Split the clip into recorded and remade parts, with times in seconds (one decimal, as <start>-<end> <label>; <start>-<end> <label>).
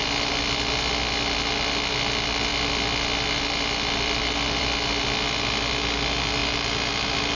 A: 0.0-7.3 remade